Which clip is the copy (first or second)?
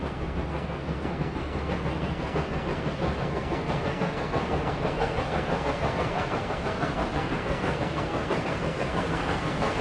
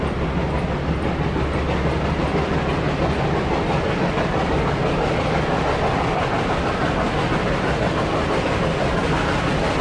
first